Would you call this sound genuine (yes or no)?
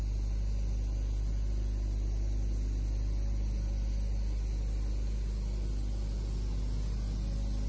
yes